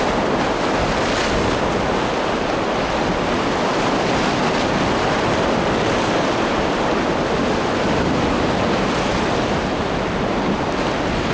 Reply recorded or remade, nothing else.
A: recorded